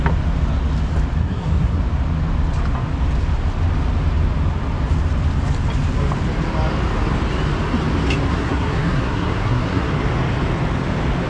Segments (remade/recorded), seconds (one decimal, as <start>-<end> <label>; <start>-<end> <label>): 0.0-1.2 recorded; 1.2-1.8 remade; 1.8-8.3 recorded; 8.3-9.9 remade; 9.9-11.3 recorded